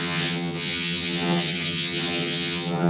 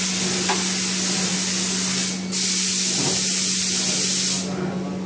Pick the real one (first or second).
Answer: second